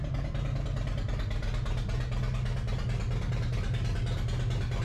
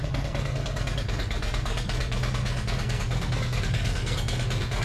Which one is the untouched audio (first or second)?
first